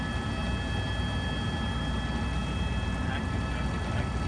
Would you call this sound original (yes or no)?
yes